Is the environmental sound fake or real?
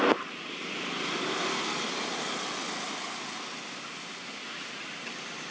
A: real